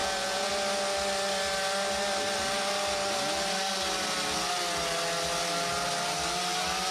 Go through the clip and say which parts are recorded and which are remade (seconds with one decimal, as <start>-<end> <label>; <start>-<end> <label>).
0.0-0.5 remade; 0.5-6.9 recorded